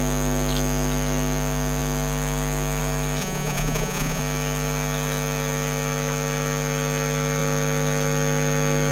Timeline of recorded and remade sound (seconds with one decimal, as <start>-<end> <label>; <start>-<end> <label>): 0.0-3.2 recorded; 3.2-4.2 remade; 4.2-8.9 recorded